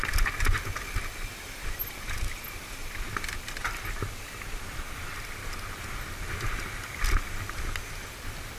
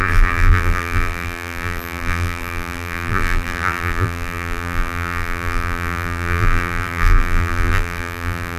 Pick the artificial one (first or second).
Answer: second